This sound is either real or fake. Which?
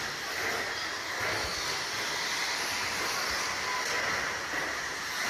real